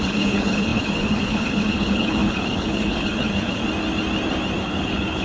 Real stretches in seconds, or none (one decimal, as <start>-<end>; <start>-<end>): 3.6-4.6